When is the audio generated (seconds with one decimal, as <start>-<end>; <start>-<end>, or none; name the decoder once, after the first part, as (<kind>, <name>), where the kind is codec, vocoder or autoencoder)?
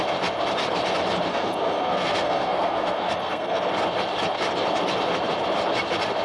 1.3-3.6 (codec, SNAC)